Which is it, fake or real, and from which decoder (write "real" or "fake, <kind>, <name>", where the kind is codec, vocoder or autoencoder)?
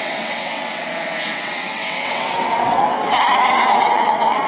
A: fake, vocoder, WaveNeXt